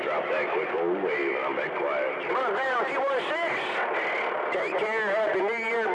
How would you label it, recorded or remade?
recorded